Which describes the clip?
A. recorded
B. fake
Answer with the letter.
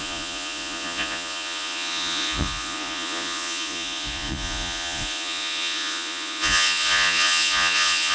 B